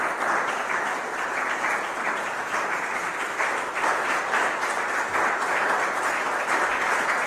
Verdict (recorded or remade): recorded